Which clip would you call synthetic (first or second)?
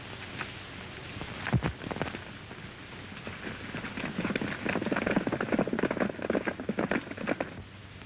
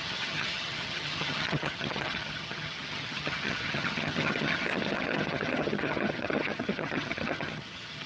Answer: second